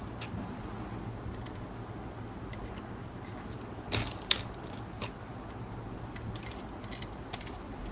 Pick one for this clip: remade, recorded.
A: recorded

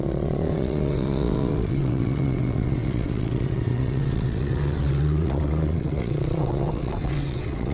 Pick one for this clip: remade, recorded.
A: remade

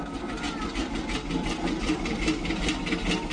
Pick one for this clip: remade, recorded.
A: recorded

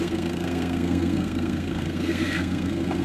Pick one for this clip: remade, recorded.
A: remade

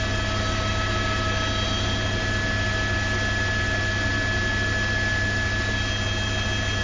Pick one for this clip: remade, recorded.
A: recorded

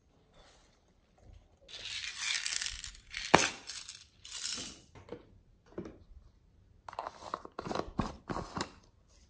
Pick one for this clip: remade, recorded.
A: recorded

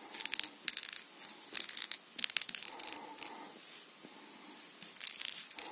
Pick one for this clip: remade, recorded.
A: recorded